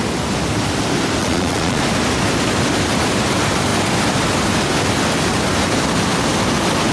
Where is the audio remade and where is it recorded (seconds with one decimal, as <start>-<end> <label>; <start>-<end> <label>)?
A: 0.0-1.2 recorded; 1.2-1.8 remade; 1.8-6.9 recorded